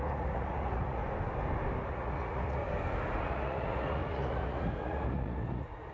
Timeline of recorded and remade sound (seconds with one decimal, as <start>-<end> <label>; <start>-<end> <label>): 0.0-1.0 remade; 1.0-1.9 recorded; 1.9-2.6 remade; 2.6-3.2 recorded; 3.2-5.9 remade